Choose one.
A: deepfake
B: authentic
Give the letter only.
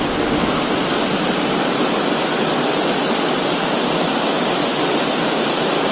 B